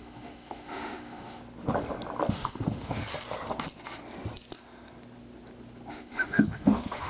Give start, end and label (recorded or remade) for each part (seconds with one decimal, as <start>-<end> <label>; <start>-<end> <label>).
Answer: 0.0-1.4 remade; 1.4-2.3 recorded; 2.3-3.0 remade; 3.0-5.9 recorded; 5.9-7.1 remade